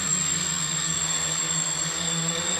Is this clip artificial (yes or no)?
yes